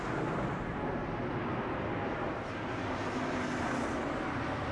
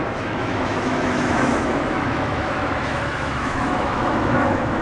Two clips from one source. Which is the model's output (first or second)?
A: second